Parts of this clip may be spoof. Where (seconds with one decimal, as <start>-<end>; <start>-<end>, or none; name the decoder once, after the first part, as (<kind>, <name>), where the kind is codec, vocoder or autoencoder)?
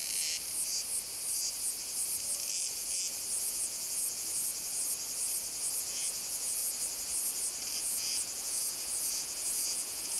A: 3.5-4.5 (vocoder, Vocos); 5.8-6.6; 7.8-10.2